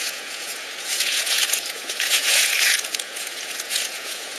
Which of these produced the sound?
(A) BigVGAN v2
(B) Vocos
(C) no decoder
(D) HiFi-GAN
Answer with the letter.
B